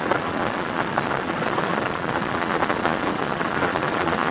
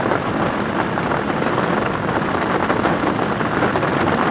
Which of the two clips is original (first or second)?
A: second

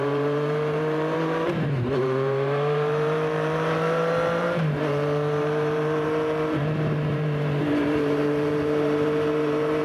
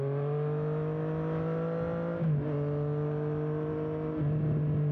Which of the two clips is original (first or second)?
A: second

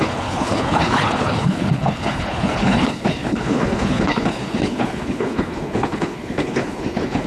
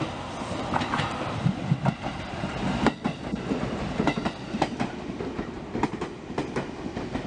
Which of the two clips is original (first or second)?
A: second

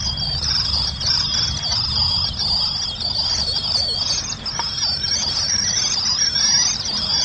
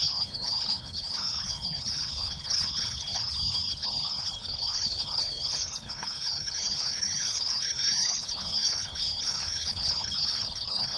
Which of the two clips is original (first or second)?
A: first